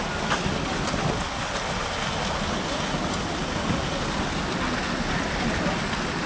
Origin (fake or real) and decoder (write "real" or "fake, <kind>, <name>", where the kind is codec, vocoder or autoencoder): real